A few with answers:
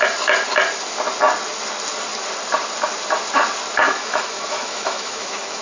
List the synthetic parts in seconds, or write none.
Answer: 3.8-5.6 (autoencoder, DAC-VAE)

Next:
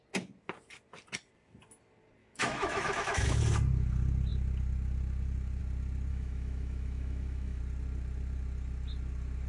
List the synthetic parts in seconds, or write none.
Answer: 2.2-3.4 (autoencoder, DAC-VAE); 6.1-7.6